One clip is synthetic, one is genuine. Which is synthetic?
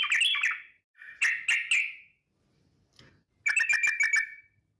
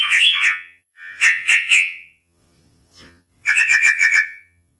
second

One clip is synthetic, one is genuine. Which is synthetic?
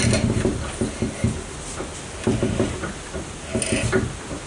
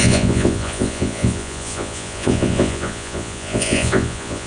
second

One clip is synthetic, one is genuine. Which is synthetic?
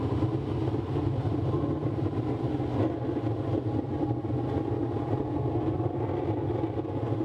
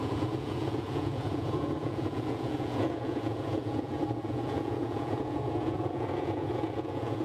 second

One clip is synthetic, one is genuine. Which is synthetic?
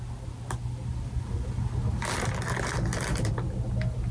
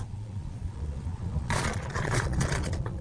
second